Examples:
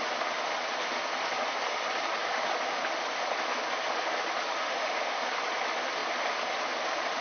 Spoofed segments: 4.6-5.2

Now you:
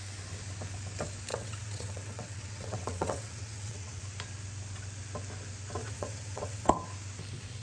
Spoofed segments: 1.3-4.0; 5.8-6.7

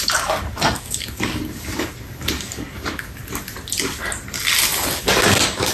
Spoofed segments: 0.0-3.2; 5.0-5.7

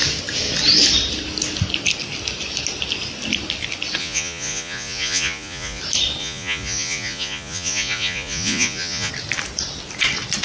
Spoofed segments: 4.0-5.8; 6.2-9.1